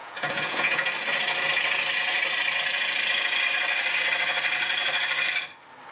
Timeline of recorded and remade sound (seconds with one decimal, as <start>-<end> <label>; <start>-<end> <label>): 0.0-0.9 remade; 0.9-5.9 recorded

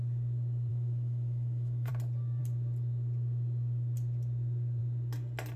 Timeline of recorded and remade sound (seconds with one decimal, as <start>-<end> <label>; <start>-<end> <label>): 0.0-0.7 recorded; 0.7-1.9 remade; 1.9-5.6 recorded

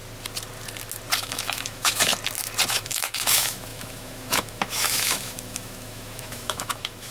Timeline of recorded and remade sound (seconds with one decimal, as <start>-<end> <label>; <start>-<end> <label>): 0.0-1.2 recorded; 1.2-2.1 remade; 2.1-2.7 recorded; 2.7-7.1 remade

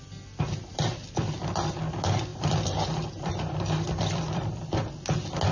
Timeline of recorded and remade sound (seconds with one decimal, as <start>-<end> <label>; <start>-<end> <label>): 0.0-2.3 recorded; 2.3-4.6 remade; 4.6-5.5 recorded

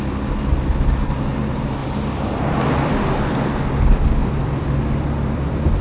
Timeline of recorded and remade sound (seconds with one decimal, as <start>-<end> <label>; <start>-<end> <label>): 0.0-1.8 recorded; 1.8-3.6 remade; 3.6-4.2 recorded; 4.2-5.8 remade

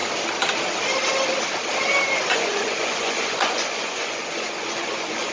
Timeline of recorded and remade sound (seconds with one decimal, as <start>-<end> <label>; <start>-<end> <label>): 0.0-2.3 recorded; 2.3-5.3 remade

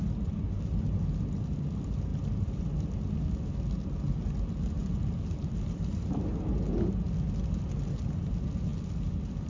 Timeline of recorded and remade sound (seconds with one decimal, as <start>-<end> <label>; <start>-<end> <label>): 0.0-9.5 recorded